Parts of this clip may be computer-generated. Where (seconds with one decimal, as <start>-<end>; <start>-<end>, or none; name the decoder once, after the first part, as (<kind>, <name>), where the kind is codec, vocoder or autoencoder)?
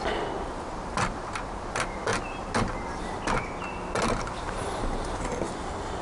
none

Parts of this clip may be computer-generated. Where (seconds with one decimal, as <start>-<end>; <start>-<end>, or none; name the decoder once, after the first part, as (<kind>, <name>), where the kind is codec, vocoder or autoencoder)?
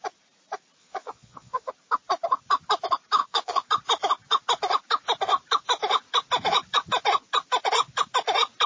0.8-1.7 (vocoder, Vocos); 3.2-3.7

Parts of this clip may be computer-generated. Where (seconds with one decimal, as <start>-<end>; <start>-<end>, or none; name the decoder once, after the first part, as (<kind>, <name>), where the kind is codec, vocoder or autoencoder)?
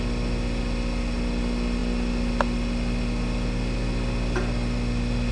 none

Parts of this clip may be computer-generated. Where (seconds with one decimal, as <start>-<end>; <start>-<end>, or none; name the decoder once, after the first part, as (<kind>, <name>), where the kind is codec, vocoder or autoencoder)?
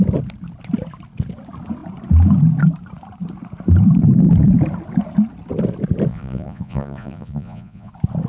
6.1-7.9 (vocoder, Vocos)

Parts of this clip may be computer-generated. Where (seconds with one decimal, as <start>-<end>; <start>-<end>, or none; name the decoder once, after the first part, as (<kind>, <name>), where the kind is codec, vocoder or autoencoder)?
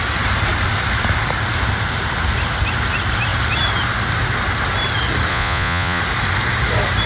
5.3-6.0 (vocoder, Vocos)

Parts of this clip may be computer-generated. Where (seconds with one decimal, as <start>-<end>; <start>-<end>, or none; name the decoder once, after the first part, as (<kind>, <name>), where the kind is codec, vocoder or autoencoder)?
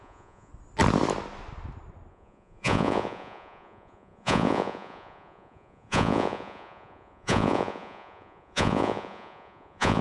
0.0-0.5 (vocoder, Vocos); 2.1-10.0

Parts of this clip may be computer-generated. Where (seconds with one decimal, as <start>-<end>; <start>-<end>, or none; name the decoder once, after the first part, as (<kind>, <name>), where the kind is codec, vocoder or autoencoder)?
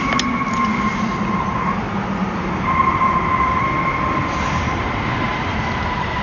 none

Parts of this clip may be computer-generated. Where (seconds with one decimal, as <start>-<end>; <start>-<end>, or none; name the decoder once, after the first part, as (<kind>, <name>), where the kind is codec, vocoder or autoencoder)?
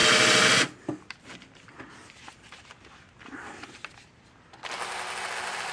none